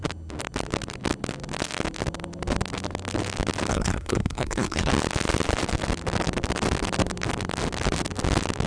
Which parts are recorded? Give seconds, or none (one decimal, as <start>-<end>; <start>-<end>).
0.0-3.7; 4.9-8.7